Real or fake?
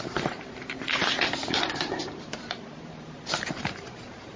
fake